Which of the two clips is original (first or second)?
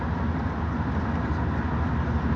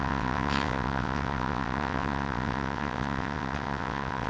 first